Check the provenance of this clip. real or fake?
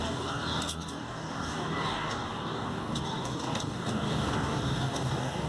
fake